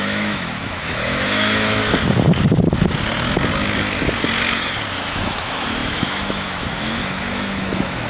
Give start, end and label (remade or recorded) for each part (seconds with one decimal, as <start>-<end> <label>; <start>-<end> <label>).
0.0-1.8 remade; 1.8-4.9 recorded; 4.9-8.1 remade